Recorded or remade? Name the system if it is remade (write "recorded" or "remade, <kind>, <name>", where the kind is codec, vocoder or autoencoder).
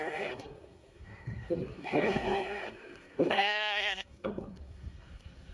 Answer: remade, codec, SNAC